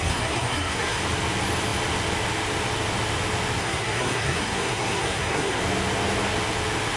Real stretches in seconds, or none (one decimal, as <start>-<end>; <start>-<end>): 1.0-3.6; 5.6-7.0

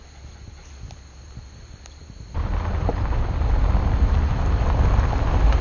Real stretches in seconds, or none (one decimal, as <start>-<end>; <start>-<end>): 0.0-5.6

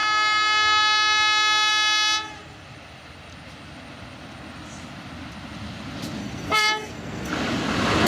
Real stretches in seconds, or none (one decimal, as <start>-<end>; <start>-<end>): 0.0-6.2; 7.3-8.1

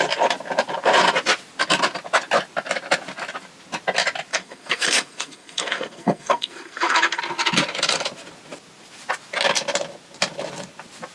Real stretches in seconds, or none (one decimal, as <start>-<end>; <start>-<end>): 0.0-4.3; 7.2-11.1

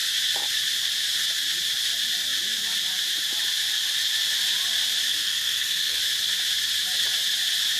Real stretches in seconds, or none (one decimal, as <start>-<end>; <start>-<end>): 0.0-5.1; 6.0-7.8

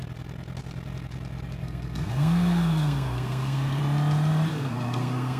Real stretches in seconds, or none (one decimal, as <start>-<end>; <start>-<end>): 0.0-1.6; 3.8-4.5

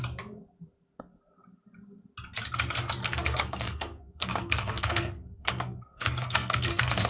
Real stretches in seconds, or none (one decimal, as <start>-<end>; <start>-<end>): 0.0-3.0